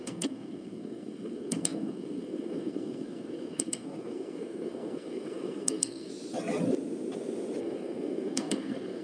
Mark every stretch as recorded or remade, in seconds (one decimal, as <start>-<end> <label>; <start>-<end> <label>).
0.0-6.1 remade; 6.1-7.6 recorded; 7.6-9.0 remade